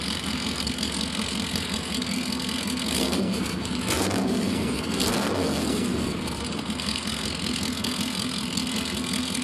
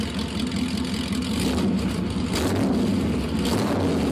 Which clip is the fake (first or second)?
first